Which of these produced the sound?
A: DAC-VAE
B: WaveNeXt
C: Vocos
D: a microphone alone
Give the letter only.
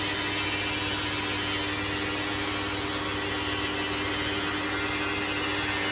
D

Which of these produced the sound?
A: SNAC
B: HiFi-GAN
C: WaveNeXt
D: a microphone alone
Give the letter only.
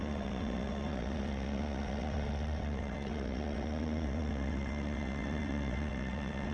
C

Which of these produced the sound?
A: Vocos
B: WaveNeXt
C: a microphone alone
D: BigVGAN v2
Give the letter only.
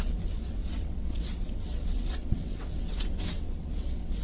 B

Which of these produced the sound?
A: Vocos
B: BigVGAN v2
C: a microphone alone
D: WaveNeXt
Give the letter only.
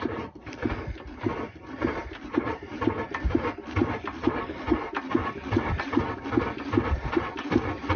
C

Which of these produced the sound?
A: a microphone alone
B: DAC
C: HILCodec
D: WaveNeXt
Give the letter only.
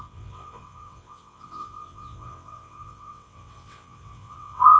D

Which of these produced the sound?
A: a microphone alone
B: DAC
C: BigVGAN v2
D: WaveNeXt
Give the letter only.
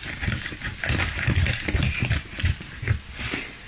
A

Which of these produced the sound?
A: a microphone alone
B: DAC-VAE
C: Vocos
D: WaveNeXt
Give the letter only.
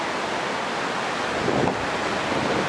A